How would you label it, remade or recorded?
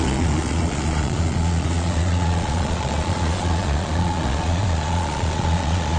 remade